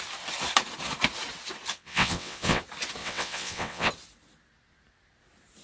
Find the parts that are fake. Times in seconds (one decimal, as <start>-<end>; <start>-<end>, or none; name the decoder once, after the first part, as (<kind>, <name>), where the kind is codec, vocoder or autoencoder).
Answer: 1.7-2.6 (vocoder, WaveNeXt); 3.0-3.9